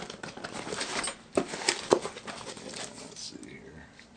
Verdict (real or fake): real